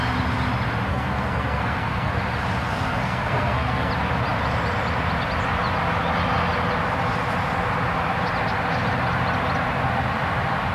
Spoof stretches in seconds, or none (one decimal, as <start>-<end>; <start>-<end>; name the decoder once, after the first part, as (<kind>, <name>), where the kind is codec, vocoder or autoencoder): 0.9-2.1 (codec, SNAC); 2.6-3.9